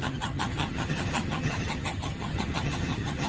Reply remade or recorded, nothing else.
remade